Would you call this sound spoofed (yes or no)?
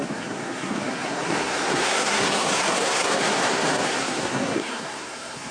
yes